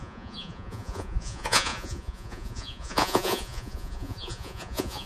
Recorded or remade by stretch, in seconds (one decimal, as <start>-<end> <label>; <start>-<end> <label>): 0.0-5.1 remade